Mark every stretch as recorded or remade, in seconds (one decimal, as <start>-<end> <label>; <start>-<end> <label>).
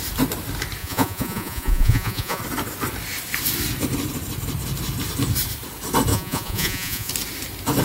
0.0-0.8 recorded; 0.8-2.4 remade; 2.4-6.1 recorded; 6.1-7.1 remade; 7.1-7.8 recorded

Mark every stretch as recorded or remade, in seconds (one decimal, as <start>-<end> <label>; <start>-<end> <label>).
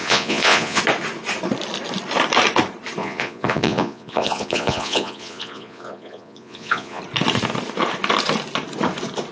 0.0-0.8 remade; 0.8-3.0 recorded; 3.0-7.0 remade; 7.0-9.3 recorded